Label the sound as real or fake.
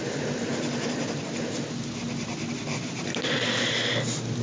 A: real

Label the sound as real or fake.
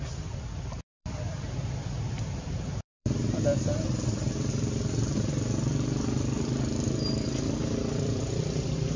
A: fake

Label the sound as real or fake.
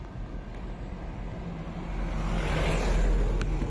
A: real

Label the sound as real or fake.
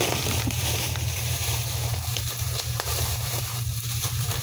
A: fake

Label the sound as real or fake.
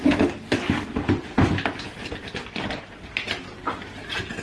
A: real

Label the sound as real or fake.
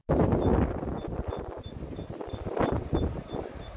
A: real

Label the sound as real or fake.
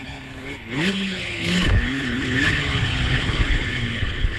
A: fake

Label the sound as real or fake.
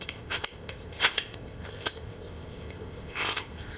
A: fake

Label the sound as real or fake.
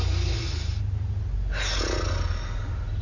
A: real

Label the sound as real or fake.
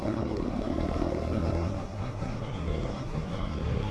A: fake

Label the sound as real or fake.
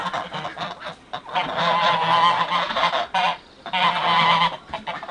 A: real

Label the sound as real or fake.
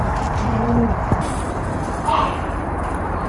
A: fake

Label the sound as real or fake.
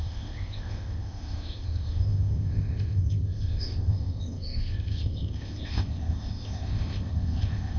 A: fake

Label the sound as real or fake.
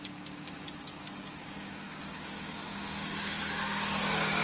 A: fake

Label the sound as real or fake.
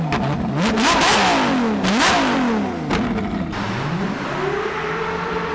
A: real